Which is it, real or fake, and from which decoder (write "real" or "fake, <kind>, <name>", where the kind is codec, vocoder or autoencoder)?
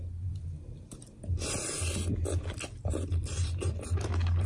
real